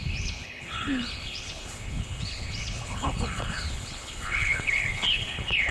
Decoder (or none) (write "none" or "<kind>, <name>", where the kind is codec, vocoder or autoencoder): codec, HILCodec